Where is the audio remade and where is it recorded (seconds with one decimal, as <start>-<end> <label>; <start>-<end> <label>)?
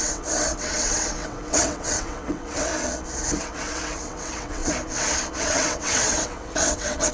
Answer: 0.0-2.7 remade; 2.7-3.4 recorded; 3.4-4.6 remade; 4.6-5.4 recorded; 5.4-7.1 remade